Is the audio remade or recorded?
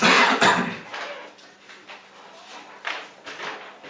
remade